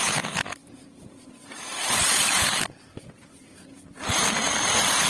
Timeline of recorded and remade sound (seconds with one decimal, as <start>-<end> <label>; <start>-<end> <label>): 0.0-0.6 recorded; 0.6-3.7 remade; 3.7-5.1 recorded